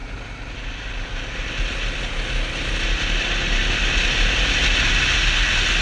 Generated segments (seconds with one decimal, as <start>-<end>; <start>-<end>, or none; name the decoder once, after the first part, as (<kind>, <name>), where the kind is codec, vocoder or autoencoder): none